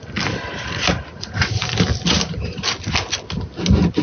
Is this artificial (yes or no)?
no